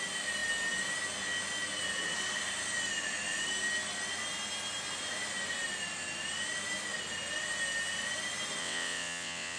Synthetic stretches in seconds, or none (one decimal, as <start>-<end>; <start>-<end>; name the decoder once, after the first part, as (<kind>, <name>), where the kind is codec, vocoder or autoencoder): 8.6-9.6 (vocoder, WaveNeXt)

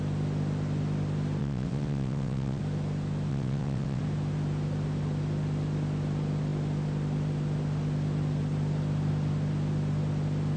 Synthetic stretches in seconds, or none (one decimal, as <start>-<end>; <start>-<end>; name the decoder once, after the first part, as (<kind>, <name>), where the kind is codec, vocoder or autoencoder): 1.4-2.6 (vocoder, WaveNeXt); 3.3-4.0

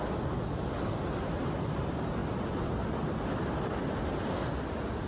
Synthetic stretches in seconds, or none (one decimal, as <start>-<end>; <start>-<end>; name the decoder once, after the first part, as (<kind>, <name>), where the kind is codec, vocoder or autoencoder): none

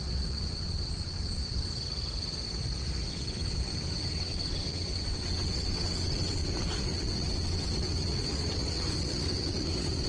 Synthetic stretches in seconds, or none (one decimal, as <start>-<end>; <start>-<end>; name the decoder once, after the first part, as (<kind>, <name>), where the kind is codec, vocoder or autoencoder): 0.0-1.7 (vocoder, WaveNeXt); 3.1-10.1

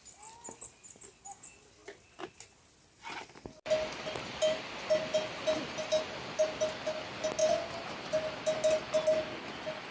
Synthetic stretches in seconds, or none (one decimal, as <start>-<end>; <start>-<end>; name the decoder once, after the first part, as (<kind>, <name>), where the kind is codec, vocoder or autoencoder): none

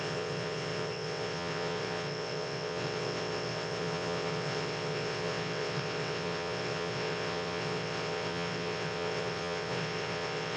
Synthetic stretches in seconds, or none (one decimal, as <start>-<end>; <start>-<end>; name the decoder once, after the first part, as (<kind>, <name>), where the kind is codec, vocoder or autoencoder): 0.0-10.6 (vocoder, WaveNeXt)

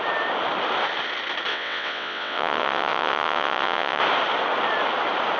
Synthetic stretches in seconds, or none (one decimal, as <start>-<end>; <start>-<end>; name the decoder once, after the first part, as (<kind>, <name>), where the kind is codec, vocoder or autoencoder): 1.5-4.0 (vocoder, WaveNeXt)